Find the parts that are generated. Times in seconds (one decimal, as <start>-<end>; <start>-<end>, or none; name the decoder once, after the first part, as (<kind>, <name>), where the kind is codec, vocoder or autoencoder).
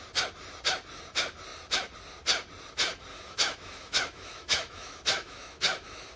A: 3.1-6.2 (autoencoder, DAC-VAE)